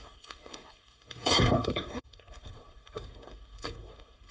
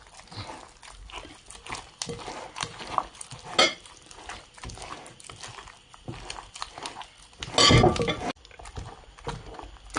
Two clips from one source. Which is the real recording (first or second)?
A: second